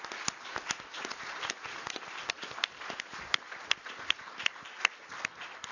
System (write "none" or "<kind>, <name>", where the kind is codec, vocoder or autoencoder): none